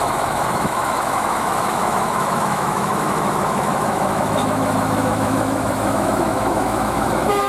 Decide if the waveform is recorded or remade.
remade